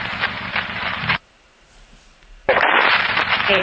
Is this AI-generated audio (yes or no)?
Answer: yes